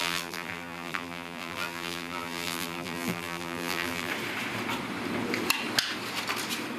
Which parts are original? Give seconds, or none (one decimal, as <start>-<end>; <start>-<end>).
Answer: 4.1-6.8